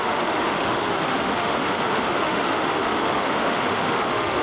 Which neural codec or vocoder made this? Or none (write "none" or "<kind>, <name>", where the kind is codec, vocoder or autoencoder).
autoencoder, DAC-VAE